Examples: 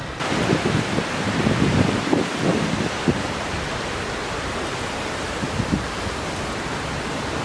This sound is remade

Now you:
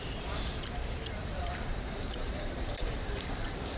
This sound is remade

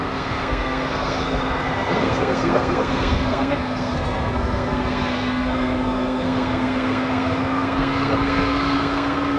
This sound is remade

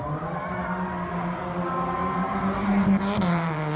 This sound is remade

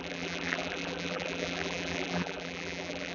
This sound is remade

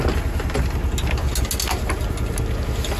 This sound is recorded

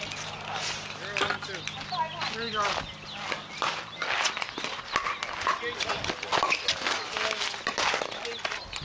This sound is recorded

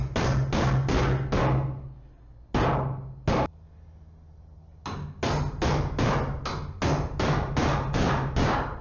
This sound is recorded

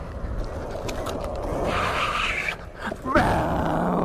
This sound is recorded